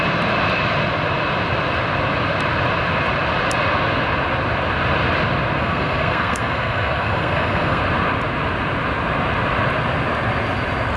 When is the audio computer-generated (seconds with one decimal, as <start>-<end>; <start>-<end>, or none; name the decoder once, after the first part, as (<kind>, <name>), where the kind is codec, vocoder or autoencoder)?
5.6-7.8 (codec, SNAC)